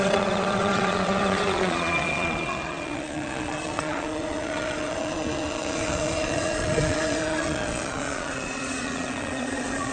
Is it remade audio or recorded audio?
remade